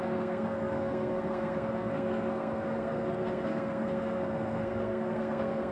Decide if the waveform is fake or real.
fake